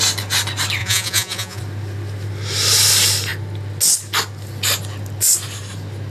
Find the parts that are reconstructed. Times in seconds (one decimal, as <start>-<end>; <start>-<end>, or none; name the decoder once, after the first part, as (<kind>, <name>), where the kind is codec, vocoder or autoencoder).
0.8-1.6 (vocoder, Vocos)